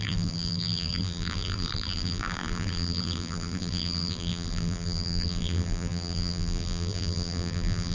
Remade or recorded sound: remade